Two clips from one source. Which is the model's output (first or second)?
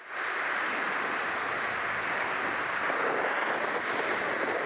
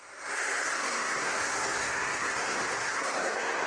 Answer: second